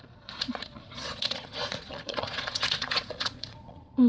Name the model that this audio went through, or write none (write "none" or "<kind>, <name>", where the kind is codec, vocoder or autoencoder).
vocoder, Vocos